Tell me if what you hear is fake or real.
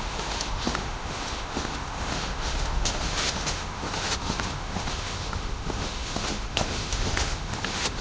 fake